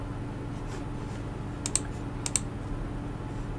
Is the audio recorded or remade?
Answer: recorded